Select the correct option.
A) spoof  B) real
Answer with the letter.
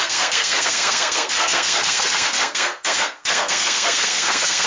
A